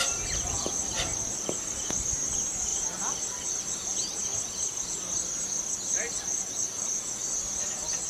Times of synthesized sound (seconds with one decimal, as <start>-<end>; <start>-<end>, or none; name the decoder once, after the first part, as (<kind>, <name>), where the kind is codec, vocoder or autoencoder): none